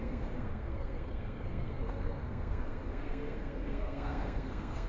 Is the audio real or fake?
fake